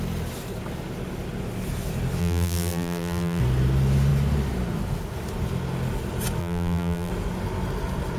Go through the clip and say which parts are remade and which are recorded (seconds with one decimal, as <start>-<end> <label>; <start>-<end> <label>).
0.0-2.2 recorded; 2.2-3.4 remade; 3.4-6.4 recorded; 6.4-7.1 remade; 7.1-8.2 recorded